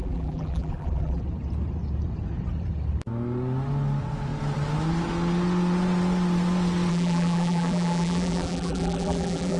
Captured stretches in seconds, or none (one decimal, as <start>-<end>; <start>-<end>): 1.2-6.9